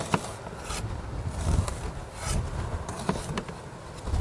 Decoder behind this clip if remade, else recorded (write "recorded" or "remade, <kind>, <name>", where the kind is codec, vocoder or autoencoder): recorded